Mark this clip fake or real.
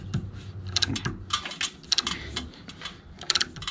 real